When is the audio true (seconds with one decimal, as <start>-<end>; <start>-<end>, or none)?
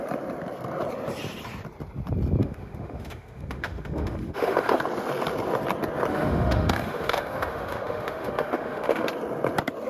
0.0-2.4; 4.8-6.1; 9.1-9.9